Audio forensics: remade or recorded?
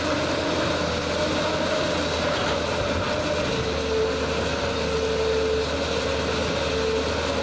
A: recorded